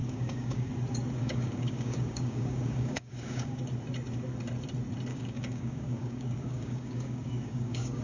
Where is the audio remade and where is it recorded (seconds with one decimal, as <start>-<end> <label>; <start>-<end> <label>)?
0.0-0.7 remade; 0.7-1.2 recorded; 1.2-3.6 remade; 3.6-5.1 recorded; 5.1-8.0 remade